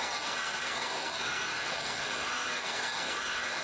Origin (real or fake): fake